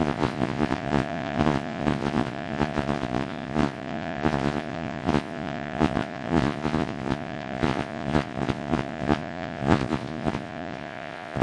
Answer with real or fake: fake